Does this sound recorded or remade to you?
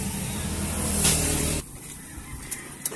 recorded